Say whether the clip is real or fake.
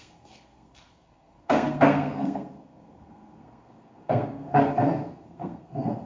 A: fake